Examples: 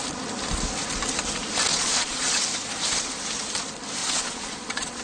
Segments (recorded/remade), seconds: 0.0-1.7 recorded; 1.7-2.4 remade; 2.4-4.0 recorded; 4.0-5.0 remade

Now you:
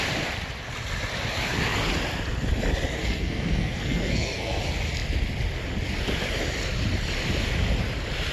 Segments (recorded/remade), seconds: 0.0-3.0 recorded; 3.0-4.6 remade; 4.6-8.3 recorded

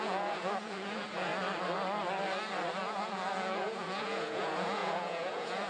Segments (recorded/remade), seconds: 0.0-1.3 remade; 1.3-2.8 recorded; 2.8-5.7 remade

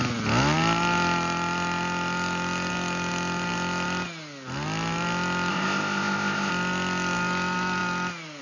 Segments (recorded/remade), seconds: 0.0-5.5 recorded; 5.5-6.5 remade; 6.5-8.4 recorded

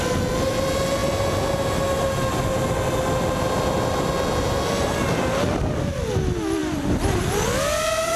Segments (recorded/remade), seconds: 0.0-8.2 recorded

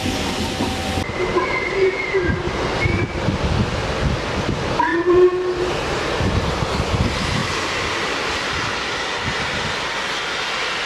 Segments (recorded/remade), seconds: 0.0-1.3 recorded; 1.3-2.3 remade; 2.3-10.9 recorded